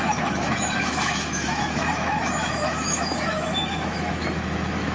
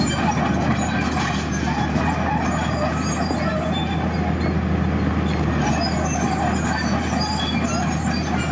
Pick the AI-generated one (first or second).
first